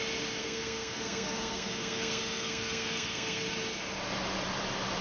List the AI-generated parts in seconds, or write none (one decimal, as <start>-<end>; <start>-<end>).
0.4-3.4